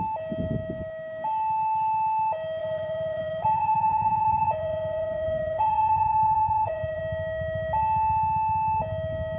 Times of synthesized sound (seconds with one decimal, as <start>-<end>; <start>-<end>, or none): 2.6-7.0